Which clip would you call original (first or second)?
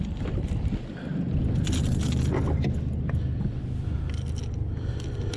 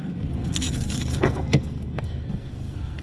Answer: first